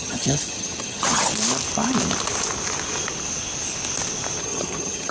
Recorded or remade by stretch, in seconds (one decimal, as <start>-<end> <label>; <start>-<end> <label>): 0.0-1.3 remade; 1.3-4.4 recorded; 4.4-5.1 remade